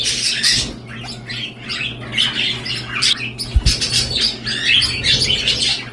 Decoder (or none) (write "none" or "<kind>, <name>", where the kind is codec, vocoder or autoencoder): none